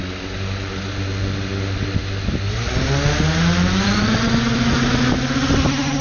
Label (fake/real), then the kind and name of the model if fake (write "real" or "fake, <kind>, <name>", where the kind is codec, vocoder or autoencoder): real